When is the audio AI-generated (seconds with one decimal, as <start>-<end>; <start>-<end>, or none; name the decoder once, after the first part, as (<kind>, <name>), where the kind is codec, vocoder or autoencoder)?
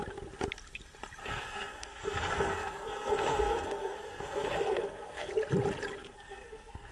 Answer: 1.2-5.3 (codec, SNAC); 6.0-6.9